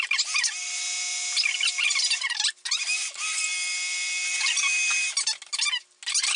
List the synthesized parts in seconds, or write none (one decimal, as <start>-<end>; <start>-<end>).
none